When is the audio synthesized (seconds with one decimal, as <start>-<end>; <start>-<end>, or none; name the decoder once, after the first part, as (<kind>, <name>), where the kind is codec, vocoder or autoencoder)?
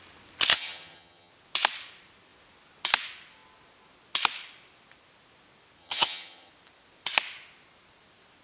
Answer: 0.5-1.3 (vocoder, HiFi-GAN); 5.8-6.5